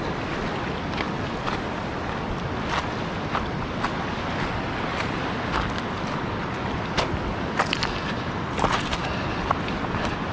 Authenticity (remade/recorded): recorded